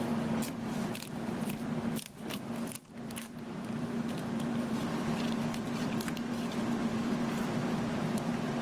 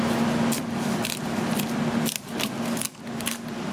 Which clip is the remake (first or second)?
first